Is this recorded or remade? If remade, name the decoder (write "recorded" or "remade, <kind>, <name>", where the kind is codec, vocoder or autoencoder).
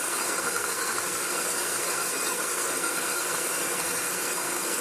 remade, codec, SNAC